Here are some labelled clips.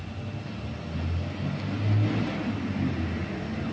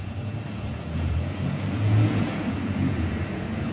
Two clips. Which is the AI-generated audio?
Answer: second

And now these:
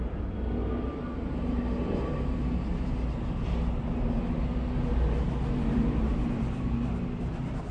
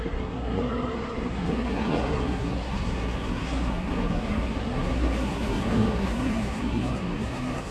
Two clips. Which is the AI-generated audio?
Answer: second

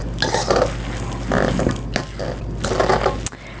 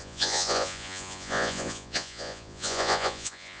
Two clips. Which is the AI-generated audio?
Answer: second